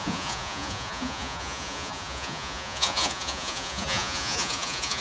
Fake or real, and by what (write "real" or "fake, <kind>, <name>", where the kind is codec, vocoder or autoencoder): fake, vocoder, Vocos